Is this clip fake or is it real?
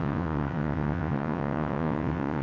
fake